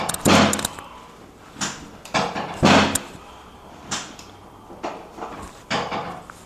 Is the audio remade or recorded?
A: recorded